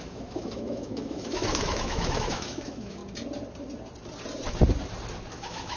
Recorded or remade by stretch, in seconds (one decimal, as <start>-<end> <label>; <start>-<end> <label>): 0.0-3.0 remade; 3.0-5.3 recorded; 5.3-5.8 remade